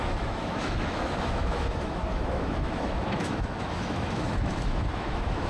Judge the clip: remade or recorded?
remade